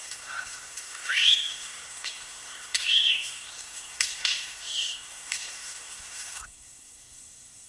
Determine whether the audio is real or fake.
fake